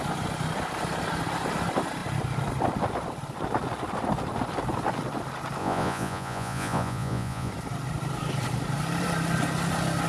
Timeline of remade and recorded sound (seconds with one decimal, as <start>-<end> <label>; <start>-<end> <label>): 0.0-5.6 recorded; 5.6-7.5 remade; 7.5-10.1 recorded